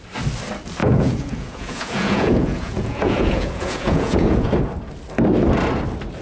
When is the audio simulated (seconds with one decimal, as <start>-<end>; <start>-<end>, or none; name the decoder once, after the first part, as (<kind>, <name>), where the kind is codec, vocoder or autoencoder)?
0.8-4.5 (vocoder, Vocos)